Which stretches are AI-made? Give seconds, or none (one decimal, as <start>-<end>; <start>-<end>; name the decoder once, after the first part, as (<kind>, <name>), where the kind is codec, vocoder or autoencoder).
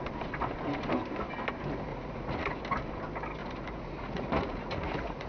1.9-2.6 (vocoder, Vocos); 3.4-5.3